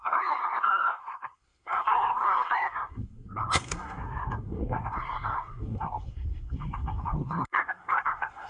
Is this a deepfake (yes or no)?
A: yes